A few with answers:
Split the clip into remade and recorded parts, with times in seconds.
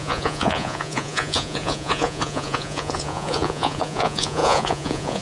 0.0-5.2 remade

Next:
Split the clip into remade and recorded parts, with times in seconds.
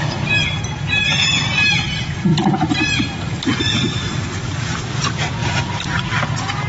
0.0-2.3 recorded; 2.3-3.3 remade; 3.3-5.4 recorded; 5.4-6.0 remade; 6.0-6.7 recorded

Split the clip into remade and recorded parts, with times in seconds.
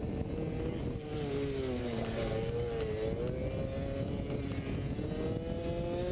0.0-6.1 recorded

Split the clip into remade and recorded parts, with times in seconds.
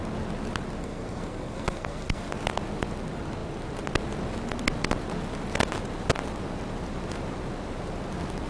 0.0-0.8 recorded; 0.8-2.3 remade; 2.3-8.5 recorded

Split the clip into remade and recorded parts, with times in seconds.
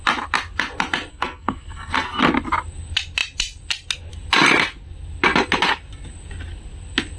0.0-1.1 recorded; 1.1-2.2 remade; 2.2-7.2 recorded